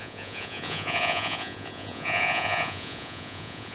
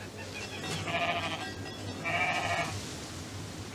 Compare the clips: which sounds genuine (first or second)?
second